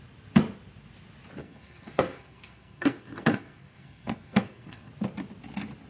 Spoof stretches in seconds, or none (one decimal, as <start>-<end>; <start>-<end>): 1.4-4.9